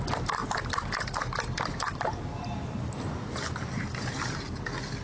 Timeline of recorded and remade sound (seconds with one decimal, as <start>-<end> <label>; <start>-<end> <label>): 0.0-5.0 recorded